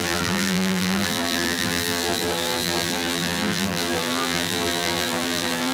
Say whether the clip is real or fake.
fake